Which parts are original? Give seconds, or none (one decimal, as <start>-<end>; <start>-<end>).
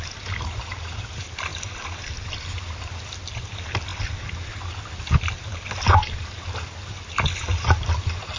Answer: 0.0-8.4